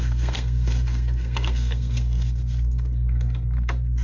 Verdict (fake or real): fake